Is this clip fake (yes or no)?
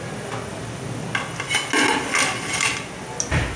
no